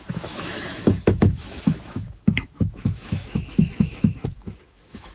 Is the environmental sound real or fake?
fake